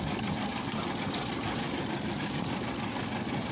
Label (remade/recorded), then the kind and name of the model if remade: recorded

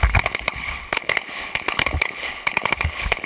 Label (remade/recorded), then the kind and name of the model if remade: remade, codec, HILCodec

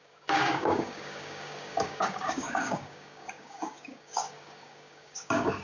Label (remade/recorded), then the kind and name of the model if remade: remade, codec, DAC